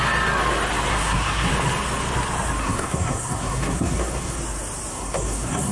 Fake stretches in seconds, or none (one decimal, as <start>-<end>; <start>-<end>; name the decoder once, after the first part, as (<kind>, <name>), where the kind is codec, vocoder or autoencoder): 0.9-1.5 (codec, SNAC); 2.6-4.4; 4.9-5.7